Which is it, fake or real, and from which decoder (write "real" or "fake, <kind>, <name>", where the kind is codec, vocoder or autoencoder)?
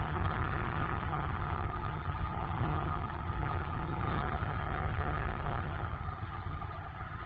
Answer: fake, vocoder, HiFi-GAN